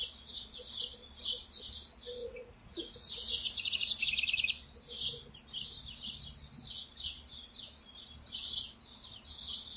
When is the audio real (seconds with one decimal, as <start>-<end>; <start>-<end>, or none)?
0.0-2.2; 4.0-9.8